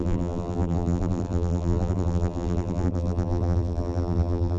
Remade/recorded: remade